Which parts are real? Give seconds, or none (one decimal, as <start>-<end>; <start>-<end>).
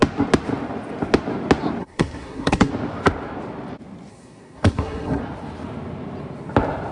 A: 0.0-1.8; 2.7-4.1; 5.2-6.9